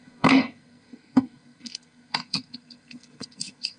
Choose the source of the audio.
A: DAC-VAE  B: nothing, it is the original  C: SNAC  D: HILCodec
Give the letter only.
C